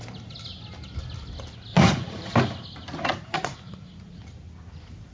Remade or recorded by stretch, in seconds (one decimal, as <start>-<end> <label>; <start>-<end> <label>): 0.0-1.7 recorded; 1.7-2.3 remade; 2.3-3.1 recorded; 3.1-4.2 remade; 4.2-5.1 recorded